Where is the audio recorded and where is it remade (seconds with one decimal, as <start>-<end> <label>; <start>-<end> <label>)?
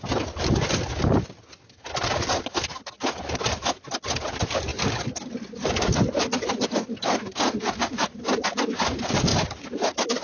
0.0-10.2 recorded